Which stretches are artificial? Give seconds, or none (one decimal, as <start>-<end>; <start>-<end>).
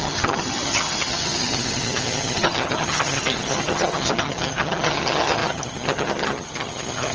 0.0-7.1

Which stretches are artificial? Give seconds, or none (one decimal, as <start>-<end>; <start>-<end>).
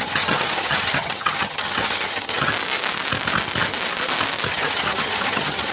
0.0-2.5; 4.5-5.7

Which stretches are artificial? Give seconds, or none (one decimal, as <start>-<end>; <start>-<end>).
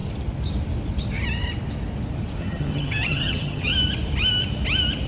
2.4-3.7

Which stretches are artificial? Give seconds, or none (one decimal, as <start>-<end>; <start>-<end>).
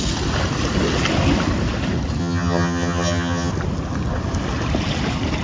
2.2-3.5